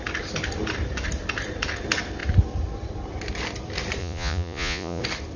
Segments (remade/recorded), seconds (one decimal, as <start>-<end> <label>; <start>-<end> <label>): 0.0-4.0 recorded; 4.0-5.0 remade; 5.0-5.4 recorded